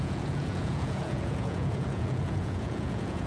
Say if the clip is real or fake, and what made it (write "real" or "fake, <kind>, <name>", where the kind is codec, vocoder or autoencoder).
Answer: fake, vocoder, Vocos